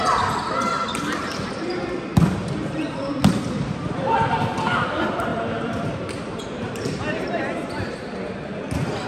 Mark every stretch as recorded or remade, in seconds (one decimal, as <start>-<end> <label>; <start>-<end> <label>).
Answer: 0.0-5.3 recorded; 5.3-8.7 remade; 8.7-9.1 recorded